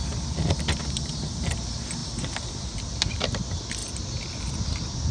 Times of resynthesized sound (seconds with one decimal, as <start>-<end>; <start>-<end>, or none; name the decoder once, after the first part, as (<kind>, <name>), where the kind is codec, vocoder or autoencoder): none